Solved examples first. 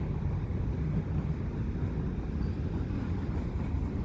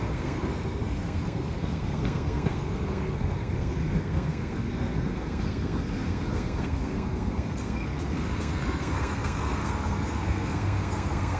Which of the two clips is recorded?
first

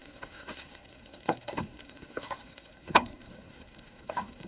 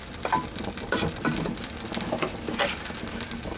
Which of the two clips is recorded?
second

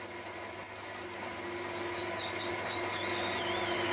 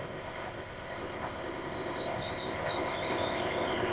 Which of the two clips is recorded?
first